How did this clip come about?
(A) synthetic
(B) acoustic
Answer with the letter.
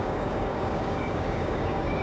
A